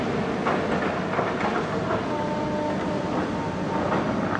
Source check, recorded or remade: recorded